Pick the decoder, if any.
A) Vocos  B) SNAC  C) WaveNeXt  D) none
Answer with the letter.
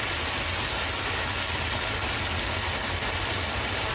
D